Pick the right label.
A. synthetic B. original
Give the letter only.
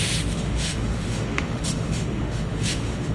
A